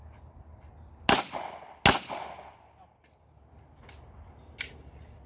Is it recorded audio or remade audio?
recorded